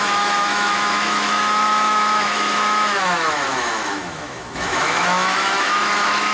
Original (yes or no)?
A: no